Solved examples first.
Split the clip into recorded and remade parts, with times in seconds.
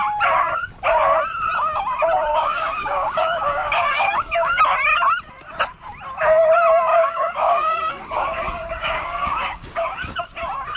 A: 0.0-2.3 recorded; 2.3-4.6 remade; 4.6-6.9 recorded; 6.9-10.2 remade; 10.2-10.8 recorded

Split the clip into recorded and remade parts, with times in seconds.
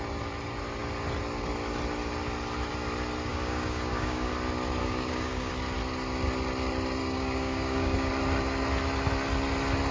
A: 0.0-3.3 recorded; 3.3-4.3 remade; 4.3-4.8 recorded; 4.8-5.5 remade; 5.5-7.0 recorded; 7.0-8.1 remade; 8.1-9.9 recorded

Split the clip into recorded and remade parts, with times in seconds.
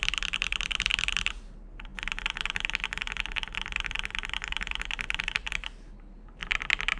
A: 0.0-7.0 recorded